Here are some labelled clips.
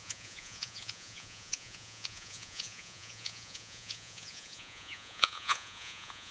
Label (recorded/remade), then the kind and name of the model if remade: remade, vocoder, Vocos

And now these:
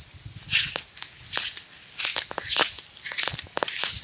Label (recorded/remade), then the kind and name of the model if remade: recorded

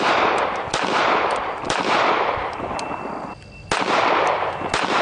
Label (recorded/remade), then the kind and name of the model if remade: recorded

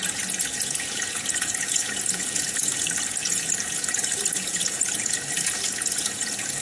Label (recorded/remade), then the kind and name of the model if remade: remade, vocoder, Vocos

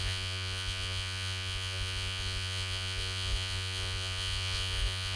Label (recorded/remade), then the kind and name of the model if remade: remade, vocoder, Vocos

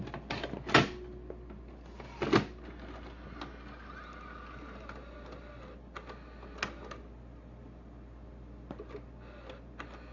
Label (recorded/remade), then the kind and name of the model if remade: recorded